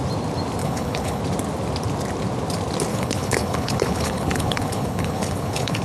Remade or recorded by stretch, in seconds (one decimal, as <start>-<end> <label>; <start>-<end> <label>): 0.0-0.6 recorded; 0.6-1.2 remade; 1.2-2.9 recorded; 2.9-5.8 remade